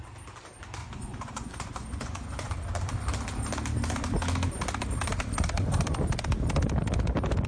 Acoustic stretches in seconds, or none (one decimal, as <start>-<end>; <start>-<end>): 0.0-0.8; 2.5-7.5